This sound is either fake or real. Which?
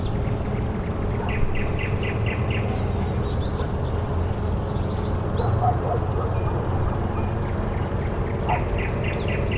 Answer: real